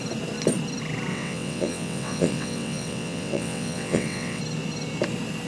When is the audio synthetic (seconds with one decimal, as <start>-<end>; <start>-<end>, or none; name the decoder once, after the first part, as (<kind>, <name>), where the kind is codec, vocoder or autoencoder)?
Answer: 1.1-4.4 (vocoder, WaveNeXt)